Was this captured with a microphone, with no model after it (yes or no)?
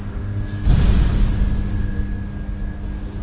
yes